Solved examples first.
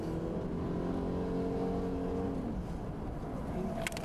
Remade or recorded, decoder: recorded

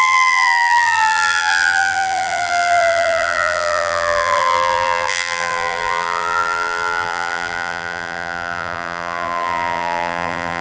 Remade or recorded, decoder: remade, vocoder, BigVGAN v2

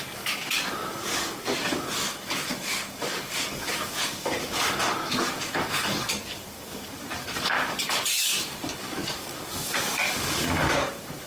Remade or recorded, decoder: remade, codec, DAC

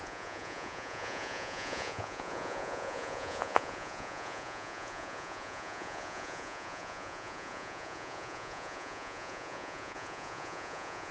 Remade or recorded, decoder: remade, vocoder, Vocos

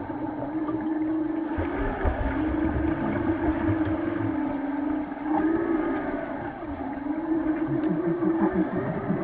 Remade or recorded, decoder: recorded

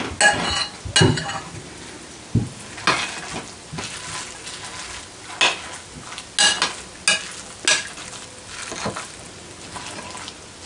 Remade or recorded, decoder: recorded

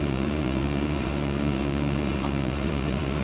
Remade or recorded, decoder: remade, vocoder, Vocos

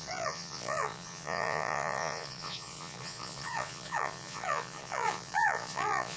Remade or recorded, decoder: remade, vocoder, Vocos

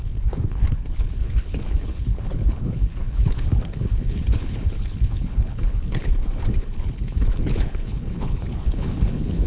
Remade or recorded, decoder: remade, codec, HILCodec